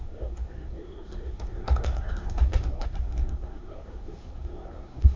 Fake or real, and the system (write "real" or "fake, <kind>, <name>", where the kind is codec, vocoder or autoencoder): fake, codec, SNAC